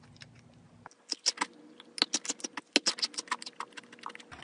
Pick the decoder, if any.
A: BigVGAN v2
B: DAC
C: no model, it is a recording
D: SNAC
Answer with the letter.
C